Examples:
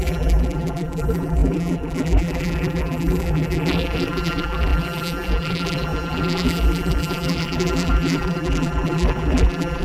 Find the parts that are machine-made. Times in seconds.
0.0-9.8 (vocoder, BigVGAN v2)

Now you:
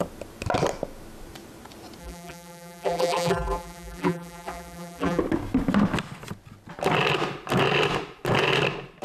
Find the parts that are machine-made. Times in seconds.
2.0-5.2 (vocoder, BigVGAN v2)

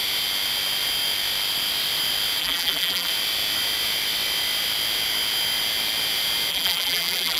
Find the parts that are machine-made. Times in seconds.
2.4-3.1 (vocoder, BigVGAN v2); 6.5-7.4

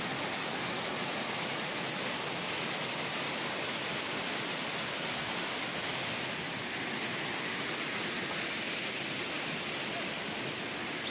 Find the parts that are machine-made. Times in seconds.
7.1-8.3 (vocoder, BigVGAN v2)

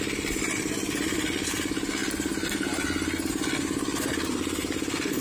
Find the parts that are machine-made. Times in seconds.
none